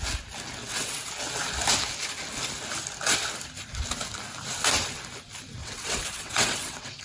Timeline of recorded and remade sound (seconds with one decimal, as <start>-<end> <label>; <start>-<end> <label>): 0.0-0.6 recorded; 0.6-1.1 remade; 1.1-5.6 recorded; 5.6-7.0 remade